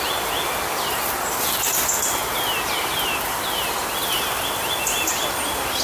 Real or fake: real